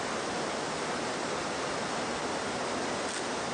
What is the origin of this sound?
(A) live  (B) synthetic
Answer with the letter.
A